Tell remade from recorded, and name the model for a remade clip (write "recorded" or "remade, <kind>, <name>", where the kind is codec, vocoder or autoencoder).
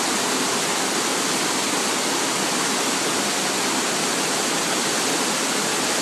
recorded